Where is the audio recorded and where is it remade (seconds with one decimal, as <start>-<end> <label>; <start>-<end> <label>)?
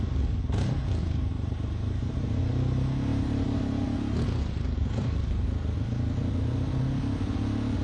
0.0-1.0 recorded; 1.0-2.4 remade; 2.4-3.1 recorded; 3.1-3.8 remade; 3.8-4.8 recorded; 4.8-5.5 remade; 5.5-7.8 recorded